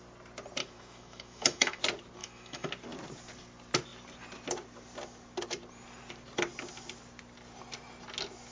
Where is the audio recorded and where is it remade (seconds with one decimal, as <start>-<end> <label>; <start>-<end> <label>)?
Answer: 0.0-0.6 recorded; 0.6-1.8 remade; 1.8-2.2 recorded; 2.2-2.7 remade; 2.7-8.5 recorded